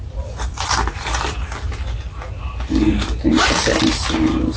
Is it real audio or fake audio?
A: real